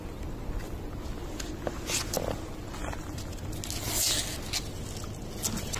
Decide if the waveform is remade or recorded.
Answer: recorded